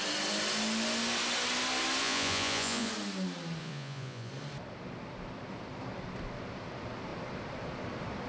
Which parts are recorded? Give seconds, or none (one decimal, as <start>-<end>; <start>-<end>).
0.0-2.0; 2.9-3.6; 4.3-8.3